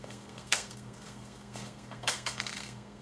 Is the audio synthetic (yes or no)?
yes